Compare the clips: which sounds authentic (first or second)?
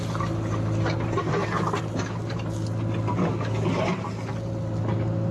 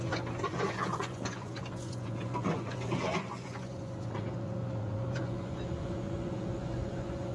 first